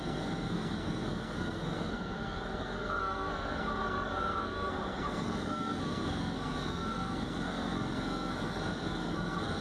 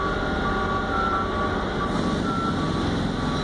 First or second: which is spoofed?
first